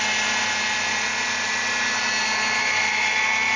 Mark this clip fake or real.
real